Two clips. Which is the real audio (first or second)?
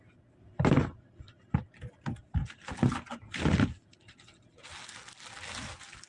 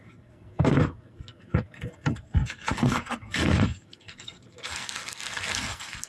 first